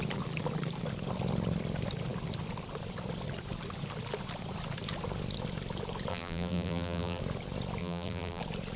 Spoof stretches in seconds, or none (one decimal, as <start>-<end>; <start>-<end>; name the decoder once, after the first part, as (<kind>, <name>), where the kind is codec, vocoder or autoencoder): 6.1-7.2 (vocoder, BigVGAN v2); 7.8-8.4